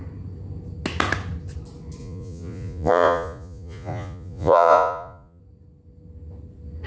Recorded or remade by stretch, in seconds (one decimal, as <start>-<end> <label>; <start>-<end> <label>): 0.0-2.0 recorded; 2.0-5.4 remade; 5.4-6.9 recorded

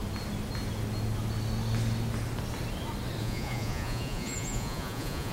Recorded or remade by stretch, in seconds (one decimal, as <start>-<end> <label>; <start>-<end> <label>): 0.0-3.2 recorded; 3.2-5.3 remade

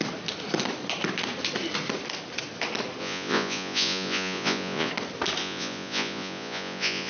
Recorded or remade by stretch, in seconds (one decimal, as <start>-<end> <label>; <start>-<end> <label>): 0.0-3.0 recorded; 3.0-4.9 remade; 4.9-5.4 recorded; 5.4-7.1 remade